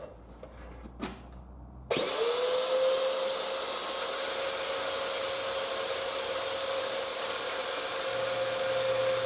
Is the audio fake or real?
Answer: real